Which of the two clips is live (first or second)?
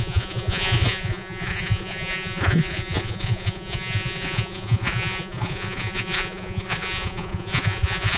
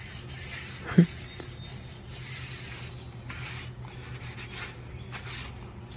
second